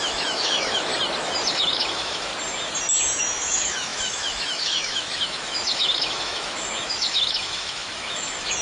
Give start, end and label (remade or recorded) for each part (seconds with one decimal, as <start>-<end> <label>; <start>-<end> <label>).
0.0-0.9 remade; 0.9-1.5 recorded; 1.5-2.3 remade; 2.3-3.2 recorded; 3.2-8.6 remade